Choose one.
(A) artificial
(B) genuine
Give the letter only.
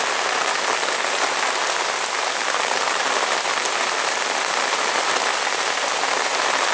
B